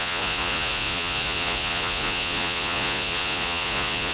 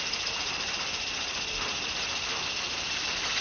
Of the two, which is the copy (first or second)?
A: first